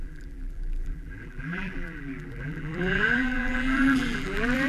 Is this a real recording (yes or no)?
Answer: no